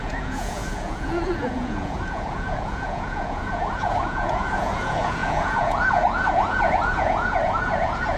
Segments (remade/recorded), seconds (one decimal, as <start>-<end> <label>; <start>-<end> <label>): 0.0-8.2 remade